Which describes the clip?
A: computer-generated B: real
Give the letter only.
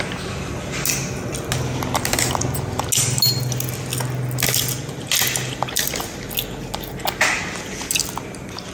B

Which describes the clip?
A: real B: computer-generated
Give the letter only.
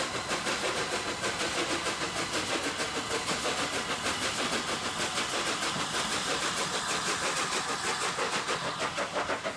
A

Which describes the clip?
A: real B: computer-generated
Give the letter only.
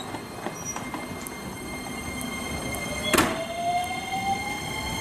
A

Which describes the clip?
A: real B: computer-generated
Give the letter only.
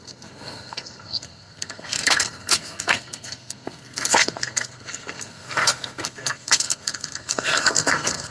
B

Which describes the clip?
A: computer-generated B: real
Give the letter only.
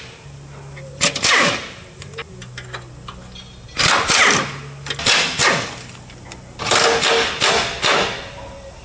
B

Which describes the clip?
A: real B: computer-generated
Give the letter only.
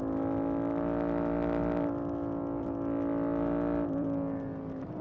A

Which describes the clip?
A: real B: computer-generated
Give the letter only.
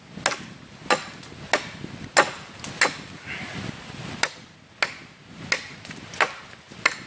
A